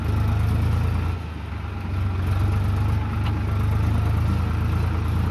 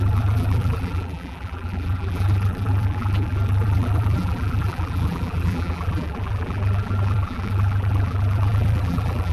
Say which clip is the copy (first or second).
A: second